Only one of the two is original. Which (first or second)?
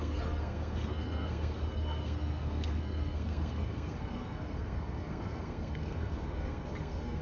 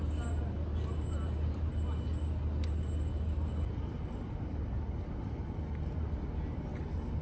second